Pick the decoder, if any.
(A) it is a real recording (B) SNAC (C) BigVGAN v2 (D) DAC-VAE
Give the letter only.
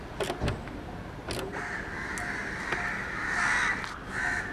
A